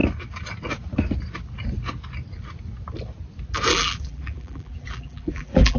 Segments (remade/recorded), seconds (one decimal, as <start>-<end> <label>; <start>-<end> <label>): 0.0-3.7 recorded; 3.7-5.8 remade